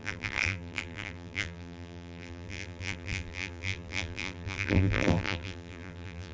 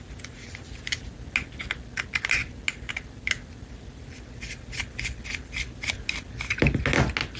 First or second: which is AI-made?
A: first